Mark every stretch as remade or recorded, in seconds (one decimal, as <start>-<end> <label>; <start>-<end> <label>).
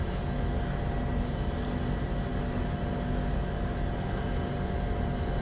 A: 0.0-5.4 recorded